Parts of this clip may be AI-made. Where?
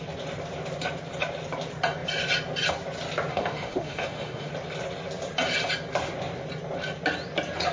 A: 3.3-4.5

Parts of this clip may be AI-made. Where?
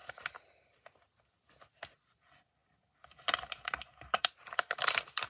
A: 2.1-5.3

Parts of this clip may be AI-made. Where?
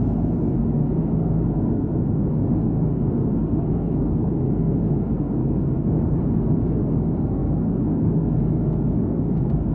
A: 0.0-9.7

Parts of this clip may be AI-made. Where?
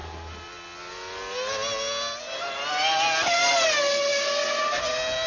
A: none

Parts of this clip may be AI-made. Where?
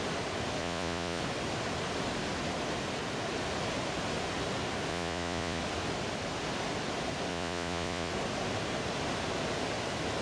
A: 0.6-1.2; 4.9-5.6; 7.3-8.1